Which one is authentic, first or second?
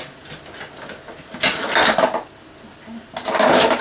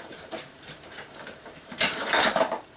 first